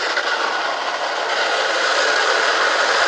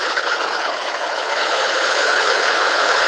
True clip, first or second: first